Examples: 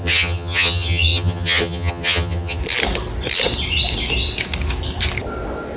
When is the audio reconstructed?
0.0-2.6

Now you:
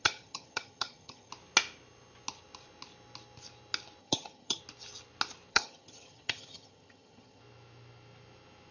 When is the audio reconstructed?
0.0-1.3; 4.0-4.6; 5.5-7.4

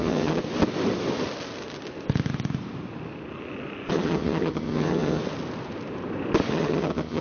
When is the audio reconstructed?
0.0-0.4; 3.9-5.2; 6.5-7.2

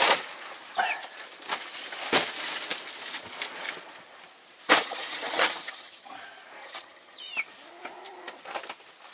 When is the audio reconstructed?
4.8-6.1; 6.6-7.2

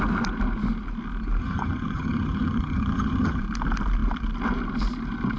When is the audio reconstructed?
1.4-3.4